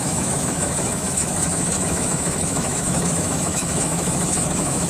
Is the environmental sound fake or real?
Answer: fake